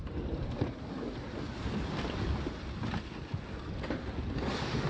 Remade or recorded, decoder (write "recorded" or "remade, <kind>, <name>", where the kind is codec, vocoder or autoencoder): recorded